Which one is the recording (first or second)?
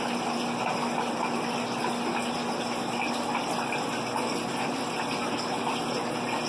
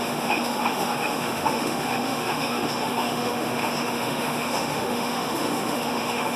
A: first